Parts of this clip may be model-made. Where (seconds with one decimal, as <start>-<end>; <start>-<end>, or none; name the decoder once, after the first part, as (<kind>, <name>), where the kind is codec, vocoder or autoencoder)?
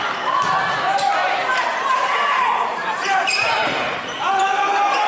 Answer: 0.0-5.1 (vocoder, BigVGAN v2)